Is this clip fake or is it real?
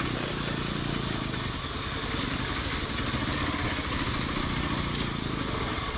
real